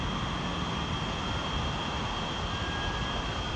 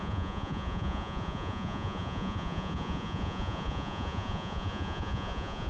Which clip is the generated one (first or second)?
second